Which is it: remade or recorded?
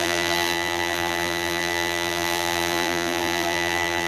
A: remade